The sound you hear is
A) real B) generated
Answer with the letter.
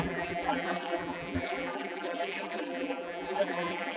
B